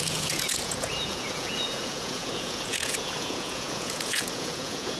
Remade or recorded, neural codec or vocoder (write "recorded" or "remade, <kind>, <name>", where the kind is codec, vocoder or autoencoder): remade, vocoder, Vocos